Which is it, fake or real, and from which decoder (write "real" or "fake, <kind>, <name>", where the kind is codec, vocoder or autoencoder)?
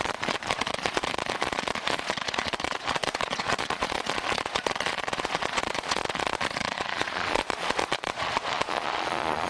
fake, vocoder, Vocos